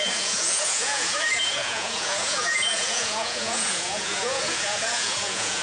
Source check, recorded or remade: remade